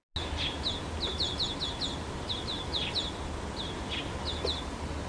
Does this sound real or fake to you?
real